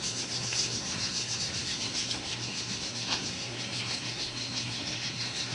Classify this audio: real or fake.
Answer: fake